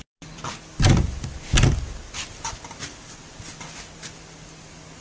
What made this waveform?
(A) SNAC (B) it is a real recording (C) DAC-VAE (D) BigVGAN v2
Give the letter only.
B